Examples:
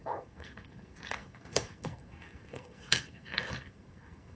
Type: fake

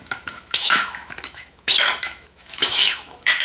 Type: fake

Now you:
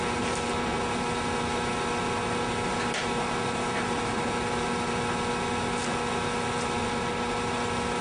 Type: real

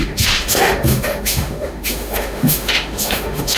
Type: fake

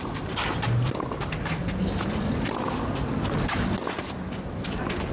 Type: real